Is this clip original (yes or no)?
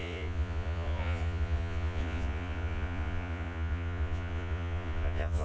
no